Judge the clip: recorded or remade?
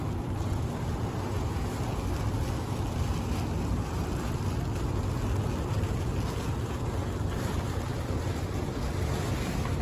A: recorded